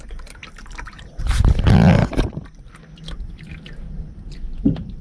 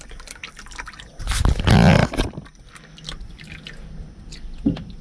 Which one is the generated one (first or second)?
first